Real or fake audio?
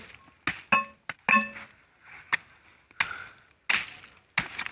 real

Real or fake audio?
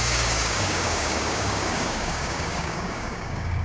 fake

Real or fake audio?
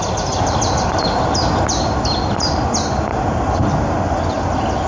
real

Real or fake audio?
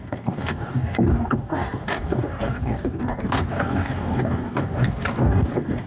fake